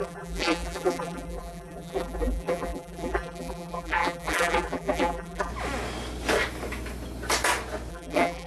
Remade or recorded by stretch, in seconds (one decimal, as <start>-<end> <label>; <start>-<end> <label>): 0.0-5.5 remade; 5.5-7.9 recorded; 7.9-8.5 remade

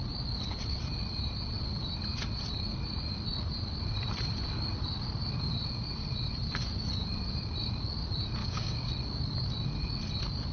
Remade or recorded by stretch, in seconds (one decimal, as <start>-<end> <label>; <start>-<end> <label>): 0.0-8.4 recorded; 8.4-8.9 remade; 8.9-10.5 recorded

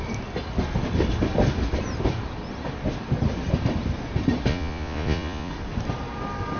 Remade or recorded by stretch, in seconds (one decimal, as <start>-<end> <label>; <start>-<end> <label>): 0.0-4.5 recorded; 4.5-5.5 remade; 5.5-6.6 recorded

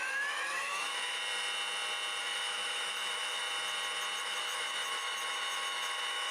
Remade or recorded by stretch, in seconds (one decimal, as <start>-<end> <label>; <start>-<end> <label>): 0.0-1.2 remade; 1.2-2.2 recorded; 2.2-3.4 remade; 3.4-4.2 recorded; 4.2-6.3 remade